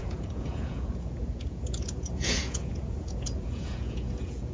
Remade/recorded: remade